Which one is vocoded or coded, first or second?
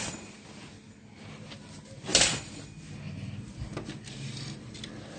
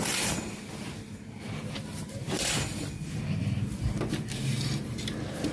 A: second